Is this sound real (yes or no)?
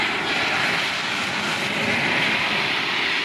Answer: yes